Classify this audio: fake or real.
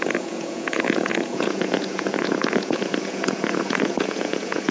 fake